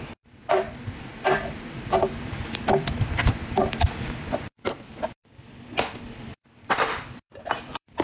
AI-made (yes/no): yes